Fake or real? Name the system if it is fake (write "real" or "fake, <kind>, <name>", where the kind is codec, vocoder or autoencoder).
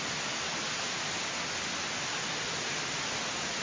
real